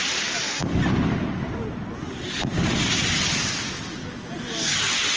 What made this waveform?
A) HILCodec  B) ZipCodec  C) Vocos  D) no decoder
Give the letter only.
D